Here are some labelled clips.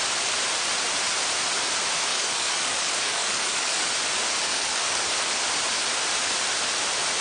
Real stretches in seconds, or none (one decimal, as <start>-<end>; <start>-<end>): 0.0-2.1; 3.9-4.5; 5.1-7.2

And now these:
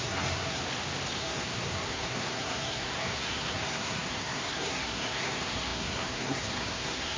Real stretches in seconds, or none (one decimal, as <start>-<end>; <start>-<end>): 0.6-1.2

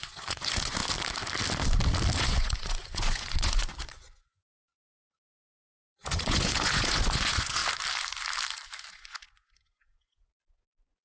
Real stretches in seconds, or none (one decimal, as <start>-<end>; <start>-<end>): 0.8-2.2; 7.6-8.9

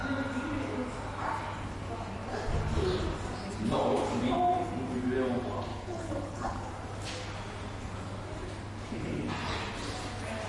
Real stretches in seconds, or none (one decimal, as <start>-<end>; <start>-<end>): 0.0-5.7; 6.7-10.5

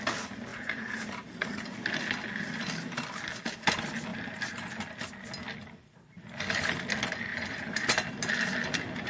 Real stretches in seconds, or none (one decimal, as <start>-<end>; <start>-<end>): 0.0-0.5; 1.8-4.1; 4.8-7.3; 8.1-9.1